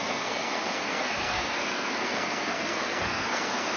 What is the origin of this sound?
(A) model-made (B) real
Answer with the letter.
A